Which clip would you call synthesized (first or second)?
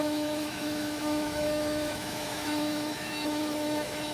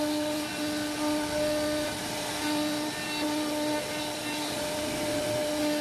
first